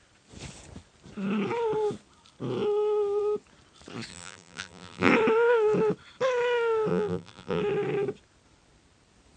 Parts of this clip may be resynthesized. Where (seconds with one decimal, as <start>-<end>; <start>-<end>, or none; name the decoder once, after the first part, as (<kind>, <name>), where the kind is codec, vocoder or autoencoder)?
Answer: 4.1-5.1 (vocoder, BigVGAN v2); 6.9-7.6